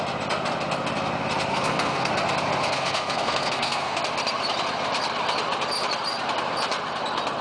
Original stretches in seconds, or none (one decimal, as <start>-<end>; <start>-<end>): 0.0-1.5; 2.1-2.6; 4.0-7.4